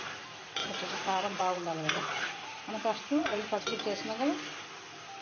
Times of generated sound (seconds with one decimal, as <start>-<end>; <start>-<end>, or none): 0.6-3.6